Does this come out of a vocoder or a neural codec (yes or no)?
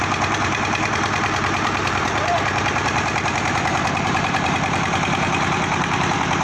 yes